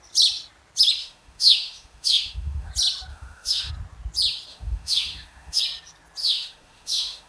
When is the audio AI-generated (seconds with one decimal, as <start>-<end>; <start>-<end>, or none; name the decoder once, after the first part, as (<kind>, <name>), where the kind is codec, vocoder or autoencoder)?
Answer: 1.0-2.7 (autoencoder, DAC-VAE); 3.1-3.7; 4.5-5.6; 6.2-7.3